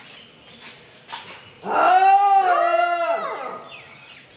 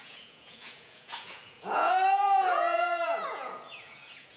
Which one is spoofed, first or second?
second